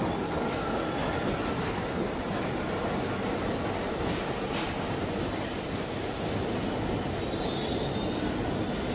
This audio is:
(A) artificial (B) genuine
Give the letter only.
B